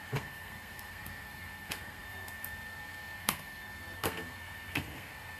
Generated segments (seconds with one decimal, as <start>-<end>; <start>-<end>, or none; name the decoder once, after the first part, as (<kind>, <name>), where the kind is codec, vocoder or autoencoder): 0.0-5.4 (codec, SNAC)